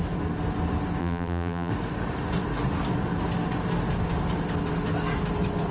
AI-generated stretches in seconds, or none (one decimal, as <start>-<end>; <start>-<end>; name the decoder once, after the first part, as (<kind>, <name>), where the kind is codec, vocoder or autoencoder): 1.0-1.7 (vocoder, BigVGAN v2)